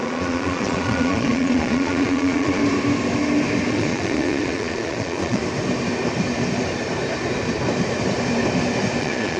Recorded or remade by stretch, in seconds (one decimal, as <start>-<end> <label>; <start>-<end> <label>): 0.0-2.6 remade; 2.6-3.7 recorded; 3.7-5.4 remade; 5.4-9.0 recorded; 9.0-9.4 remade